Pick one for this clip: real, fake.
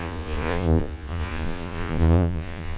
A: fake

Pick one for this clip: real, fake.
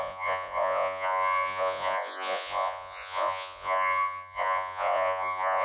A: fake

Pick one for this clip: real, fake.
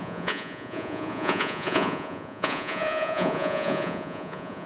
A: fake